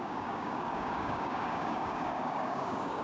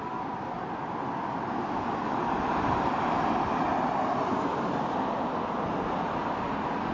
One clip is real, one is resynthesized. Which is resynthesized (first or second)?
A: first